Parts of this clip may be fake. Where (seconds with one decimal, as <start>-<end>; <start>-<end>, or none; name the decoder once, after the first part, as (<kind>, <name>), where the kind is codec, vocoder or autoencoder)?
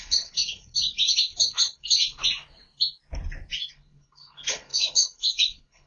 0.0-2.2 (codec, HILCodec); 3.7-5.9